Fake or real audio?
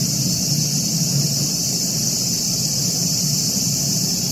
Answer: real